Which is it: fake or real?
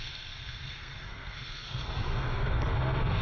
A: fake